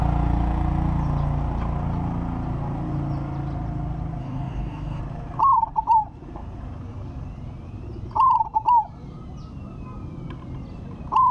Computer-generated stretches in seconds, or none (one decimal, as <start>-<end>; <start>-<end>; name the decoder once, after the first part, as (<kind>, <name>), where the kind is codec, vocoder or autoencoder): 4.2-5.0 (codec, DAC)